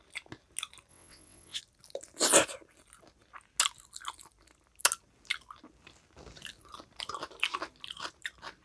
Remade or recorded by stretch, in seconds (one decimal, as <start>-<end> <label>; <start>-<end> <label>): 0.0-0.9 recorded; 0.9-1.6 remade; 1.6-8.6 recorded

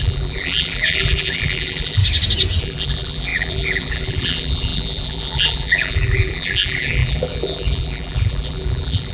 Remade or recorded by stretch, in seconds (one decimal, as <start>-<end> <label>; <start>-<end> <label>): 0.0-2.0 remade; 2.0-2.6 recorded; 2.6-9.1 remade

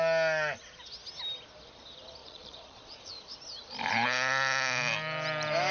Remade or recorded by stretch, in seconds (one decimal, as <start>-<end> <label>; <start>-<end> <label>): 0.0-2.2 recorded; 2.2-3.1 remade; 3.1-5.7 recorded

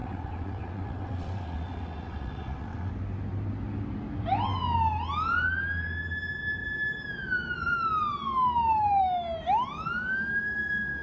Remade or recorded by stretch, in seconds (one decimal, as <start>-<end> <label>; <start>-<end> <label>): 0.0-2.9 remade; 2.9-11.0 recorded